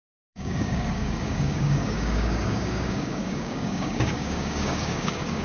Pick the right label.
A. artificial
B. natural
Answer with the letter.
A